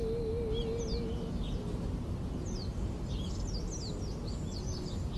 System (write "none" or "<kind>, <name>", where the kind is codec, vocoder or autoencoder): none